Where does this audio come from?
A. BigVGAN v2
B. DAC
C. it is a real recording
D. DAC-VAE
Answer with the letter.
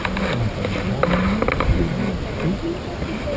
C